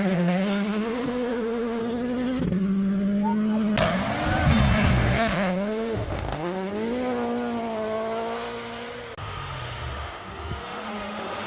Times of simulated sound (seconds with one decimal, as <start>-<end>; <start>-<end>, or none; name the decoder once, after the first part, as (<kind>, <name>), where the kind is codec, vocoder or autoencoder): 0.0-1.8 (autoencoder, DAC-VAE); 4.9-6.7; 9.2-11.5